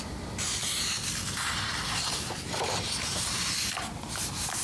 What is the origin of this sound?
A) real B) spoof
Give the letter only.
A